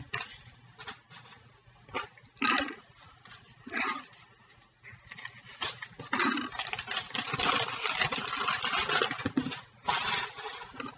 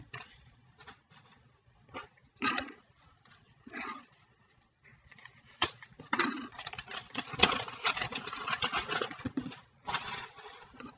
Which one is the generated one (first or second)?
second